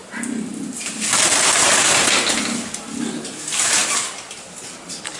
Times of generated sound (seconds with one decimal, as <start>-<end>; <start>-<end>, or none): none